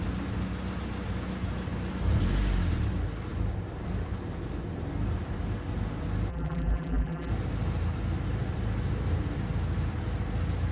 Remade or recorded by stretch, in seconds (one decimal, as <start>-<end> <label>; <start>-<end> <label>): 0.0-6.3 recorded; 6.3-7.3 remade; 7.3-10.7 recorded